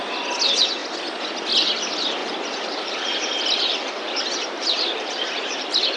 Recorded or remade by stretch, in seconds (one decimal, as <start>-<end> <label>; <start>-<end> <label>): 0.0-2.2 recorded; 2.2-6.0 remade